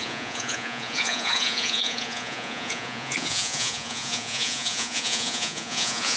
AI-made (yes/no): yes